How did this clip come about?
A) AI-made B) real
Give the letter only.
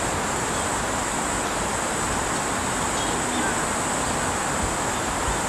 B